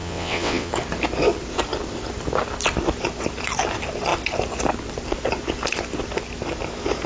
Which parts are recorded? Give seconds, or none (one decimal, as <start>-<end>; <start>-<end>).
0.7-7.1

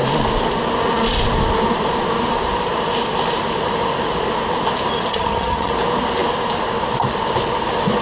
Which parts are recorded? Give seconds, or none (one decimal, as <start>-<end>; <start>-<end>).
0.0-5.1; 5.7-8.0

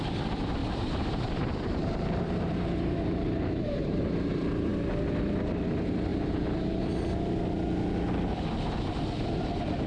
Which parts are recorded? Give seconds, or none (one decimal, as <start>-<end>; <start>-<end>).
0.0-0.6; 4.7-6.1; 6.8-9.9

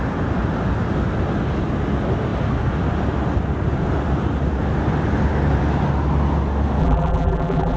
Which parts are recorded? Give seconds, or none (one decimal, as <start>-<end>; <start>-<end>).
0.0-6.8

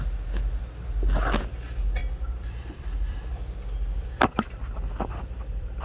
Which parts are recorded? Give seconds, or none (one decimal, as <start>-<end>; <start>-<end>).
0.0-2.0

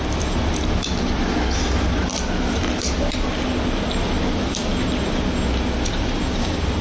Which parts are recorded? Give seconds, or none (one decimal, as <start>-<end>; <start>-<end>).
0.0-6.8

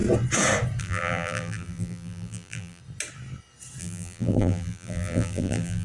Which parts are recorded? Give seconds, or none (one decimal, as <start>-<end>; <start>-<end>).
0.0-0.8; 2.8-3.8

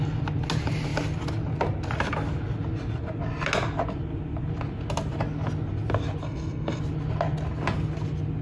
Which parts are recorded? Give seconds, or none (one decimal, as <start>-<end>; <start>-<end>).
0.0-6.2; 6.8-8.4